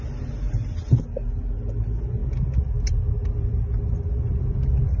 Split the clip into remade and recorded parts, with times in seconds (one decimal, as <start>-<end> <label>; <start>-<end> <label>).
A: 0.0-5.0 recorded